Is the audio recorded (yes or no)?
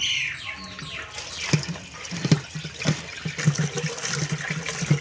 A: yes